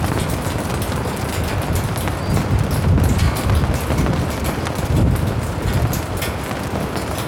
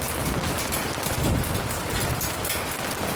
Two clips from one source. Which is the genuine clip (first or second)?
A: second